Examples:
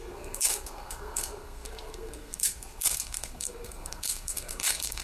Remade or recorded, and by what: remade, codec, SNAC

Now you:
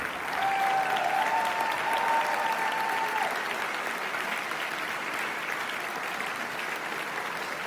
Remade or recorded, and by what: recorded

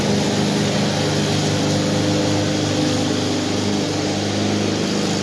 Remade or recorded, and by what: recorded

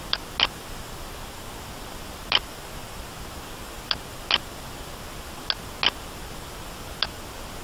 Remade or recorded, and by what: recorded